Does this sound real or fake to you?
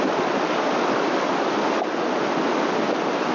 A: real